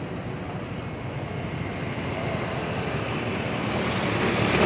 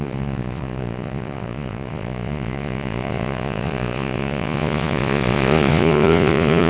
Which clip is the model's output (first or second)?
second